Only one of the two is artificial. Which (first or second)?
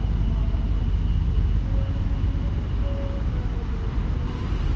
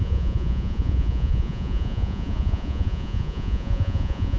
second